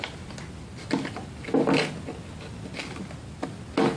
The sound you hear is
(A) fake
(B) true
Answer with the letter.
B